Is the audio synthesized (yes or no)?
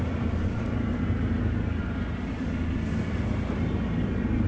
no